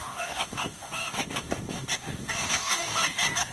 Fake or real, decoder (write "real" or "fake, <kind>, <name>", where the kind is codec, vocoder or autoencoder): fake, codec, DAC